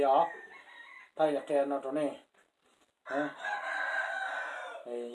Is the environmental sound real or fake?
real